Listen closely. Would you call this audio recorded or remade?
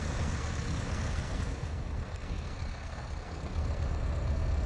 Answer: remade